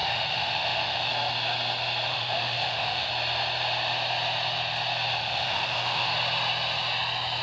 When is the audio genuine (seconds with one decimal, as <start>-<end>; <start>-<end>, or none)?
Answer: 1.1-2.1; 3.1-5.2; 6.1-7.4